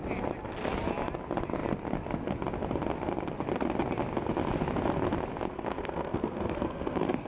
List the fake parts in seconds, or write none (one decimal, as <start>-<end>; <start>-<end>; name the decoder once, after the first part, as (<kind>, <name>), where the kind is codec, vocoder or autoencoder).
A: 5.5-7.3 (codec, SNAC)